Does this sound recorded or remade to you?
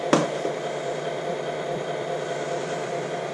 remade